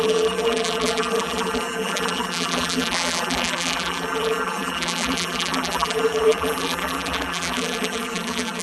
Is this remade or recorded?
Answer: remade